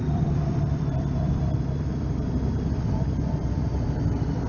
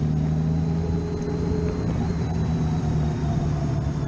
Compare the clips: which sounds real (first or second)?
second